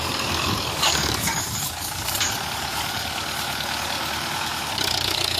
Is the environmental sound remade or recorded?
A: remade